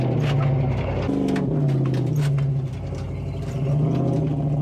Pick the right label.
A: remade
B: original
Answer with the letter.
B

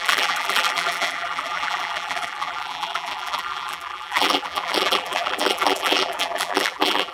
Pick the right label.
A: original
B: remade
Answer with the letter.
B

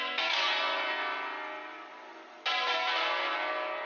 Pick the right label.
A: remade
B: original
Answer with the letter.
B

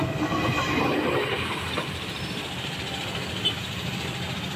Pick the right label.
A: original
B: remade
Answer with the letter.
B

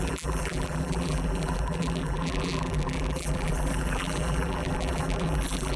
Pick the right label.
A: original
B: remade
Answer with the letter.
B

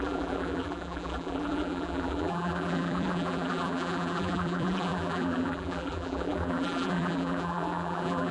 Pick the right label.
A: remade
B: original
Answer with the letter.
A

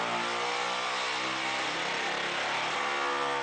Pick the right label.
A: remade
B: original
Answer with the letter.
B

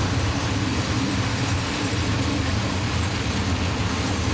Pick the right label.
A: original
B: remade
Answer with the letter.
A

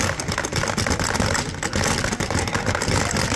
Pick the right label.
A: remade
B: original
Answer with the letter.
B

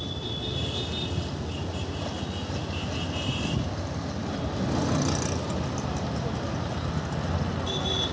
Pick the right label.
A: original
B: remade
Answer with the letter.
A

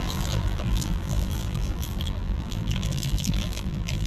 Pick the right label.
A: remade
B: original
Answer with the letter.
A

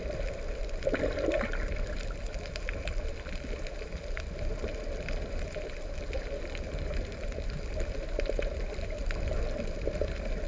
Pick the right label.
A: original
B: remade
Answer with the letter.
B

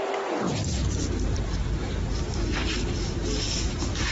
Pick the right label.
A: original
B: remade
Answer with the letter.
A